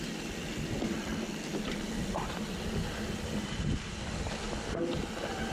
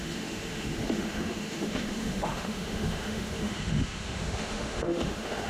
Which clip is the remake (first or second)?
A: second